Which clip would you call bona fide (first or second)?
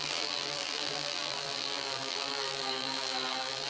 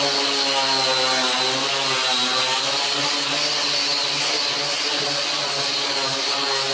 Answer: second